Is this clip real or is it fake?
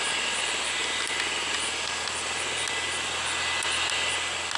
real